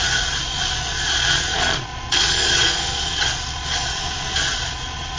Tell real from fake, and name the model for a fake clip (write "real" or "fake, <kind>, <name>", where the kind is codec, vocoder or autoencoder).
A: fake, vocoder, Vocos